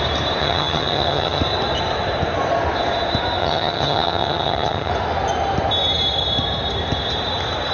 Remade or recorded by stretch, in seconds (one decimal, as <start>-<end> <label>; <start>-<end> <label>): 0.0-0.4 recorded; 0.4-1.4 remade; 1.4-3.4 recorded; 3.4-4.9 remade; 4.9-7.7 recorded